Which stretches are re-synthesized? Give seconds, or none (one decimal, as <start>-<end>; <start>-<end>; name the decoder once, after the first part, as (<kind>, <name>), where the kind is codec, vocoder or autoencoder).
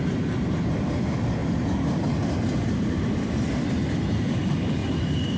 4.8-5.4 (vocoder, BigVGAN v2)